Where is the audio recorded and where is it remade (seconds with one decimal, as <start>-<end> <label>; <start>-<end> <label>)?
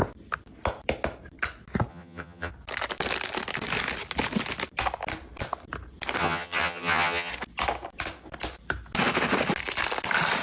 0.0-1.9 recorded; 1.9-2.5 remade; 2.5-6.2 recorded; 6.2-7.3 remade; 7.3-10.4 recorded